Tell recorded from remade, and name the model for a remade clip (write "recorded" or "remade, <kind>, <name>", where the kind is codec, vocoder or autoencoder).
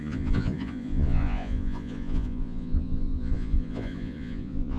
remade, vocoder, Vocos